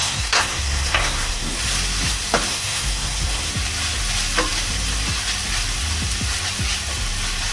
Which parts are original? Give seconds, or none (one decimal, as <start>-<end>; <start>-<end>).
1.6-2.5; 3.5-7.5